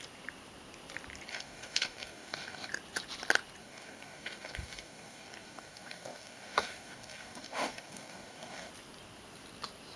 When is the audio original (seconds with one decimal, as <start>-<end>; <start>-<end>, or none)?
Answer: 0.0-1.3; 2.7-3.6; 8.7-10.0

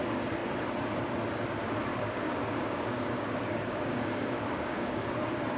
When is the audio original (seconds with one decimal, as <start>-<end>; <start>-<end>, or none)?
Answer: 0.0-1.9; 5.1-5.6

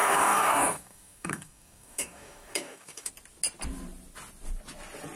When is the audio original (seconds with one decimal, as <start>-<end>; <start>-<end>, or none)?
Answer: 3.1-5.2

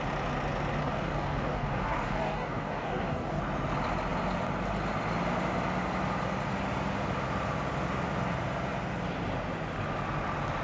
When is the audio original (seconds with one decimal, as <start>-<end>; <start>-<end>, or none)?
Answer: 0.0-0.8; 3.4-10.6

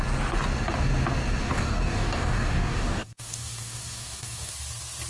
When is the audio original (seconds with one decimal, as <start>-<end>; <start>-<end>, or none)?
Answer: 0.0-1.4; 4.5-5.1

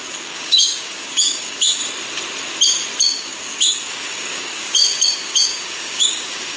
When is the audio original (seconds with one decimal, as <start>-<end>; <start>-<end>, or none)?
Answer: 1.8-3.0

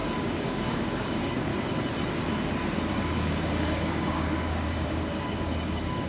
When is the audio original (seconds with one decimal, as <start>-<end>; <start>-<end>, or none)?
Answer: 1.5-2.9

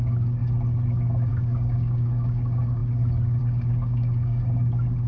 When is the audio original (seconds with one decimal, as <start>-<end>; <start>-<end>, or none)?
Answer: 0.4-1.3